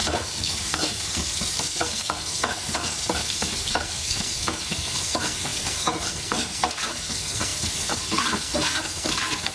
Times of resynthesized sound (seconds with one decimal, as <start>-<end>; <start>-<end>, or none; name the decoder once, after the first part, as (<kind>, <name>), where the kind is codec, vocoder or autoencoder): 0.0-9.5 (codec, SNAC)